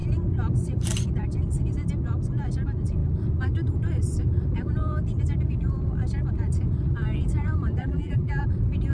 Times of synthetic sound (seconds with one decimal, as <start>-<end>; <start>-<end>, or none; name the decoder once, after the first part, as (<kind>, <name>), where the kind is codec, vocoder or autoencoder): 7.8-8.4 (vocoder, BigVGAN v2)